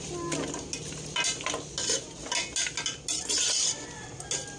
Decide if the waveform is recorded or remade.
recorded